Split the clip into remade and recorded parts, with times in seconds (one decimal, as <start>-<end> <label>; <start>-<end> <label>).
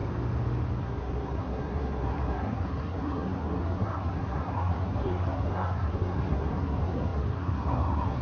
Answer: 0.0-0.8 recorded; 0.8-8.2 remade